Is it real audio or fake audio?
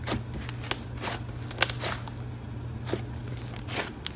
real